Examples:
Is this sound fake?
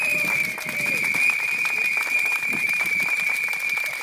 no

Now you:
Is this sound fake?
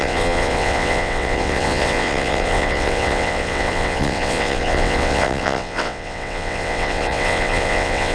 yes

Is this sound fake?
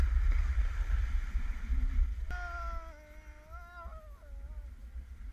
no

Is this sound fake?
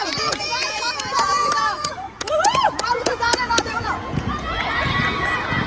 yes